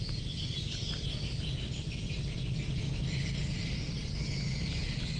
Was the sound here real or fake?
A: real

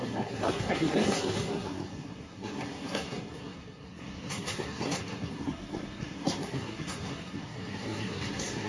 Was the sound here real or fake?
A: fake